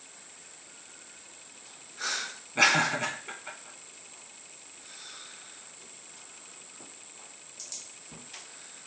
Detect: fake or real real